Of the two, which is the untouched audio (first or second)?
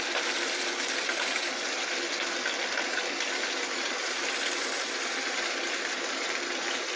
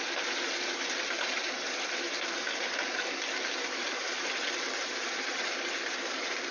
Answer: first